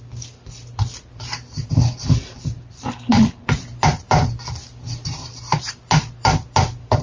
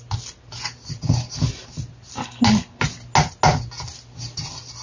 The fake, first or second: first